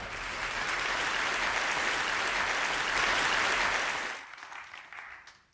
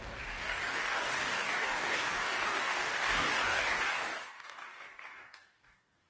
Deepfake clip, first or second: second